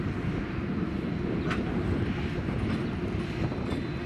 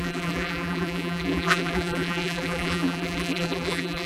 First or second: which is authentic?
first